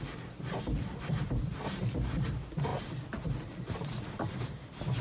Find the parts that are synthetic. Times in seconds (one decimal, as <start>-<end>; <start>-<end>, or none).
0.0-5.0